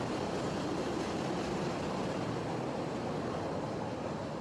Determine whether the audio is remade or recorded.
recorded